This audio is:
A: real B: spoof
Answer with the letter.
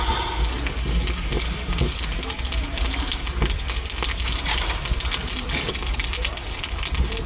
A